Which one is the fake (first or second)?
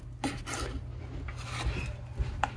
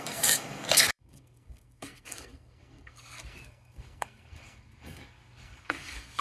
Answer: second